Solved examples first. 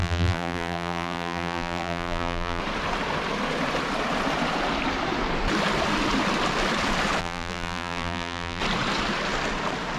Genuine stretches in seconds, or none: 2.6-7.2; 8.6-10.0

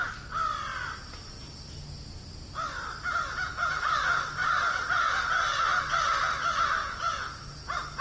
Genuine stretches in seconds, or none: 0.0-6.8; 7.4-8.0

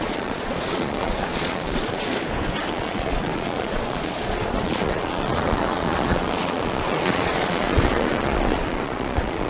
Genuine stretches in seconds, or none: 2.1-2.7

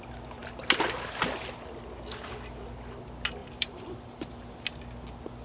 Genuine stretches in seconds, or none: 0.0-3.4; 4.3-5.4

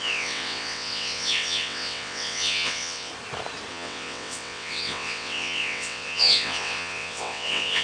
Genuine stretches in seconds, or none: 3.1-3.7

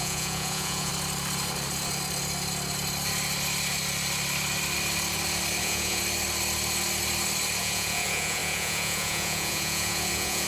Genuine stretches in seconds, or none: 0.9-5.6; 6.0-7.6

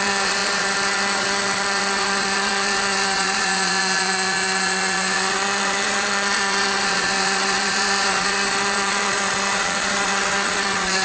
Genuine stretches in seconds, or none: none